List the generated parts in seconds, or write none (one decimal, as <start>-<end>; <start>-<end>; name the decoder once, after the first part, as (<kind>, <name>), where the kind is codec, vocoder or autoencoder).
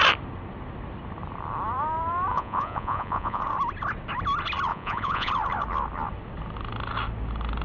2.3-3.4 (vocoder, Vocos); 4.7-5.3